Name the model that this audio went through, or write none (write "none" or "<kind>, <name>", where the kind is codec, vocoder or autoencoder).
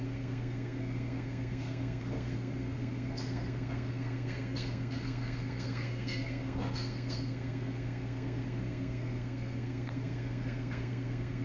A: codec, SNAC